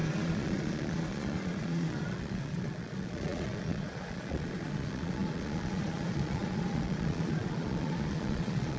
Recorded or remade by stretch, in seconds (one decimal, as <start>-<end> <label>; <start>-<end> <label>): 0.0-8.8 remade